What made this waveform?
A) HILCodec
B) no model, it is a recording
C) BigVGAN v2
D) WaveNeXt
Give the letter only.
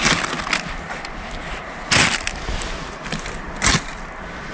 B